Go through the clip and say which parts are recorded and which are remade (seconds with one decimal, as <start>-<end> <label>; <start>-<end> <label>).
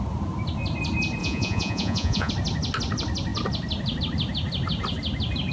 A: 0.0-1.2 recorded; 1.2-2.3 remade; 2.3-5.5 recorded